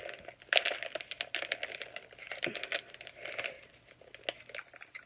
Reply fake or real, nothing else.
real